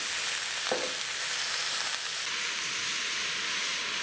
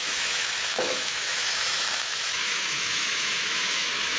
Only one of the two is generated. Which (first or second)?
second